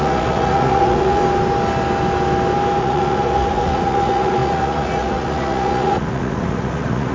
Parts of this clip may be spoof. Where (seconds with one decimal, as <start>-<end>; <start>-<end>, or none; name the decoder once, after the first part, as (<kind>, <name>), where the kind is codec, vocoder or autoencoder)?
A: 0.0-1.2 (vocoder, Vocos); 2.8-7.1